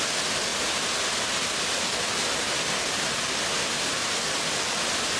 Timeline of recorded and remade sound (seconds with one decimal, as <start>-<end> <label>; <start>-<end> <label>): 0.0-4.0 recorded; 4.0-4.7 remade; 4.7-5.2 recorded